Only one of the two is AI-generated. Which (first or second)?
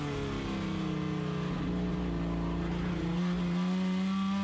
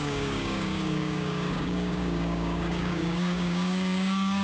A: second